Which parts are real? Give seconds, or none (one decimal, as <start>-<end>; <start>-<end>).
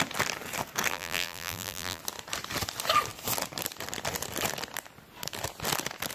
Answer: 0.0-0.9; 2.0-6.1